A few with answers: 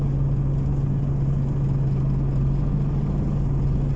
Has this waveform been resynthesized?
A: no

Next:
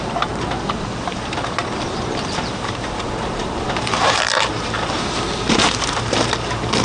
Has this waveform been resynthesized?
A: yes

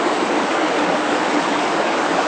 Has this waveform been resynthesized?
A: yes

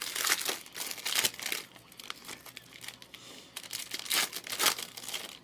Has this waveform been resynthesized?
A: no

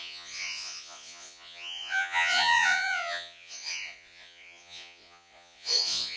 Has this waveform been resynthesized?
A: yes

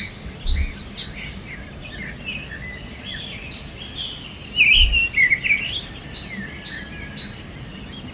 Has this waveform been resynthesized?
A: no